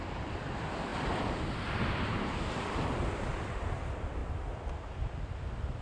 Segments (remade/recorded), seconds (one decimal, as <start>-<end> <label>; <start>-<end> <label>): 0.0-5.8 remade

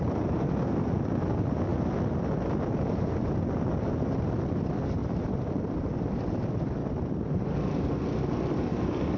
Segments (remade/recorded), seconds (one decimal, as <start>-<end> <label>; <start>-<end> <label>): 0.0-5.0 recorded; 5.0-6.2 remade; 6.2-6.8 recorded; 6.8-8.7 remade; 8.7-9.2 recorded

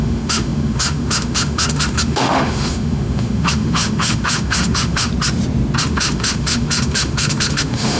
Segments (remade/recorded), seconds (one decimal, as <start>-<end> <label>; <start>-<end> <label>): 0.0-5.1 remade; 5.1-5.8 recorded; 5.8-8.0 remade

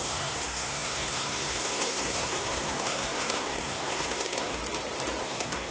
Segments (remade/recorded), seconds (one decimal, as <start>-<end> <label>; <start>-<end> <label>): 0.0-4.6 remade; 4.6-5.2 recorded; 5.2-5.7 remade

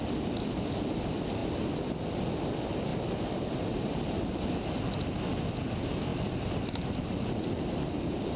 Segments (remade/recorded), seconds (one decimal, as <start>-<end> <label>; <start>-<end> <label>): 0.0-2.9 recorded; 2.9-5.1 remade; 5.1-6.1 recorded; 6.1-7.6 remade; 7.6-8.4 recorded

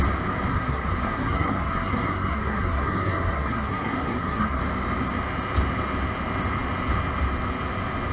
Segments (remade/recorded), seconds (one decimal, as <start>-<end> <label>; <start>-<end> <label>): 0.0-0.5 recorded; 0.5-4.6 remade; 4.6-8.1 recorded

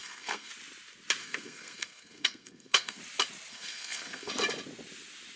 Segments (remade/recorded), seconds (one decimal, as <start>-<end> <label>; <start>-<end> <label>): 0.0-0.5 remade; 0.5-1.2 recorded; 1.2-3.0 remade; 3.0-3.5 recorded; 3.5-4.3 remade; 4.3-5.4 recorded